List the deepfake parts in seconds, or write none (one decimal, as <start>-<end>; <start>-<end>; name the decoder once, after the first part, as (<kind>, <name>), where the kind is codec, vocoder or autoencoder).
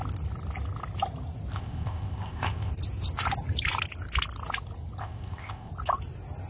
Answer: 1.5-2.7 (codec, ZipCodec); 5.0-5.7